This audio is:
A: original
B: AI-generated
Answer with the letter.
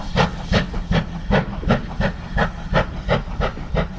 A